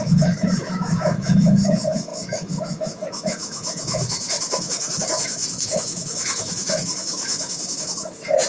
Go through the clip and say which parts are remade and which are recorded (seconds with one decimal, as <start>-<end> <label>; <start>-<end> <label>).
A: 0.0-8.5 remade